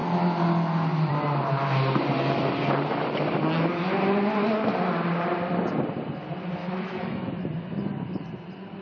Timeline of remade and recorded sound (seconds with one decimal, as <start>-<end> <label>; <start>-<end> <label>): 0.0-6.6 recorded; 6.6-7.4 remade; 7.4-8.8 recorded